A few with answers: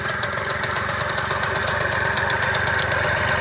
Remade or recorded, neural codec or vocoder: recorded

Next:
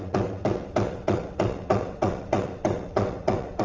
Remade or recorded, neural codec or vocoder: remade, vocoder, WaveNeXt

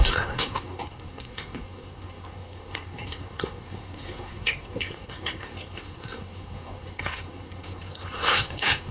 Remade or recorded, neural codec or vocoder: remade, codec, SNAC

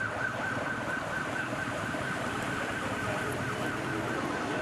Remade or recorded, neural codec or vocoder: remade, vocoder, BigVGAN v2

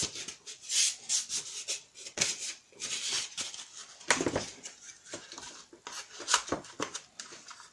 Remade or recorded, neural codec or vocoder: recorded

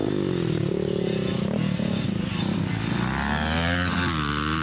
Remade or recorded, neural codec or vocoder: recorded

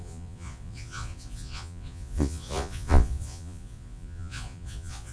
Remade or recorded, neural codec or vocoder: remade, vocoder, Vocos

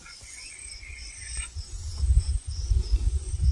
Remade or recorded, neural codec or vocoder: remade, vocoder, Vocos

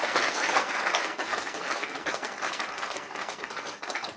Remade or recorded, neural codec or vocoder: remade, codec, SNAC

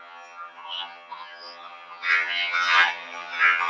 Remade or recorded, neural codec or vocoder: remade, vocoder, HiFi-GAN